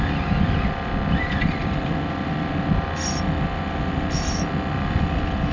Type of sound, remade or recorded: recorded